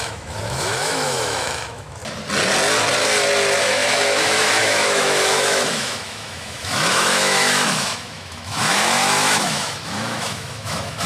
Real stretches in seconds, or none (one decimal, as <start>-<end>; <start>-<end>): 2.0-3.6